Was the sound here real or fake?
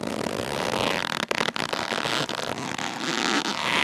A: real